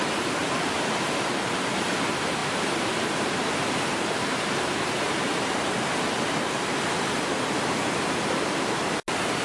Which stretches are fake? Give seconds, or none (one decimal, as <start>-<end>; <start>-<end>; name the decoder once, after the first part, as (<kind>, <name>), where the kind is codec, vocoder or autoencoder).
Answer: 0.4-1.7 (vocoder, BigVGAN v2); 2.4-5.6